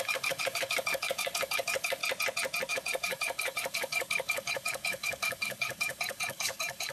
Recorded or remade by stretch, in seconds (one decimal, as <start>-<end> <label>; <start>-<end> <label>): 0.0-2.0 remade; 2.0-2.7 recorded; 2.7-6.9 remade